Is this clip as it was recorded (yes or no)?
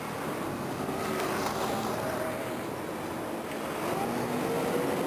yes